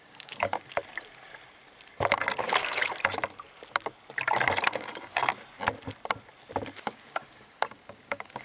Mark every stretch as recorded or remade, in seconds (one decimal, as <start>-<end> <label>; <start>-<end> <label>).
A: 0.0-0.5 remade; 0.5-2.4 recorded; 2.4-2.8 remade; 2.8-4.7 recorded; 4.7-5.2 remade; 5.2-6.8 recorded; 6.8-8.4 remade

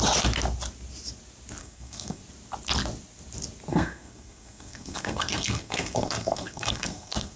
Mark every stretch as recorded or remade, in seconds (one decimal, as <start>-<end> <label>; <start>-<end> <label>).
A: 0.0-1.6 recorded; 1.6-2.2 remade; 2.2-3.7 recorded; 3.7-7.4 remade